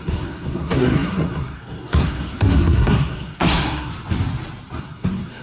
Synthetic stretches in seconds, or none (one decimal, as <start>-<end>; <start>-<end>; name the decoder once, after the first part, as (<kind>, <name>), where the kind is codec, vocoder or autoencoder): 0.0-3.9 (codec, SNAC); 4.8-5.4